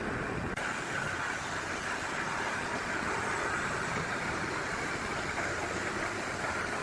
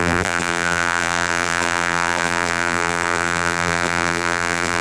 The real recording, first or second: first